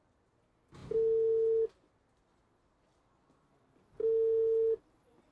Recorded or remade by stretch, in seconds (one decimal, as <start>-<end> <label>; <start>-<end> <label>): 0.0-5.3 recorded